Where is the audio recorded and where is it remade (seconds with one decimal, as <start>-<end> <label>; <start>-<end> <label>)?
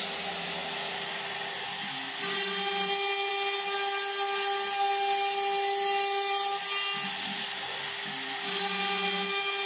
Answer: 0.0-9.7 recorded